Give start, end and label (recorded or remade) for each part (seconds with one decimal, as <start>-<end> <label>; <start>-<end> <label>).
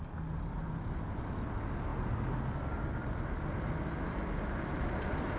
0.0-5.4 recorded